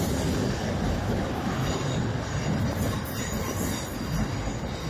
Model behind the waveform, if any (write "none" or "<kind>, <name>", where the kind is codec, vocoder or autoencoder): none